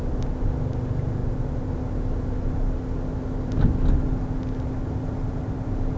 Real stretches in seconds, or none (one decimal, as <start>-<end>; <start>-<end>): 0.0-1.2; 1.7-6.0